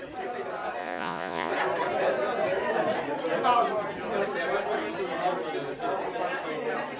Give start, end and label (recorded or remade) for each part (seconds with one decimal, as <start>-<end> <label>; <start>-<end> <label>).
0.0-0.8 recorded; 0.8-1.5 remade; 1.5-7.0 recorded